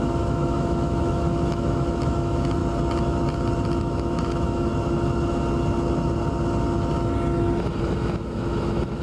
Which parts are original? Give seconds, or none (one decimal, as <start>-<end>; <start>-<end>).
2.6-3.8; 4.7-7.8